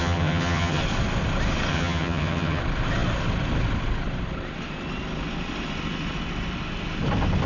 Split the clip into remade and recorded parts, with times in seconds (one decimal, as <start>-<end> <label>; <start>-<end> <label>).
0.0-0.8 remade; 0.8-1.7 recorded; 1.7-2.6 remade; 2.6-7.5 recorded

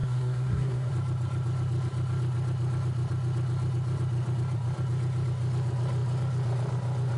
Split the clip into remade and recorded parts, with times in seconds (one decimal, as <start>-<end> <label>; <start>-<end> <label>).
0.0-0.9 remade; 0.9-7.2 recorded